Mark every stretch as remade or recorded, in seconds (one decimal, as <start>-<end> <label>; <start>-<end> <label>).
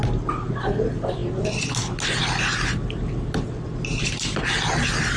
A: 0.0-5.2 recorded